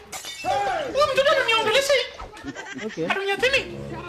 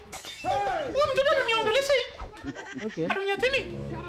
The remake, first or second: second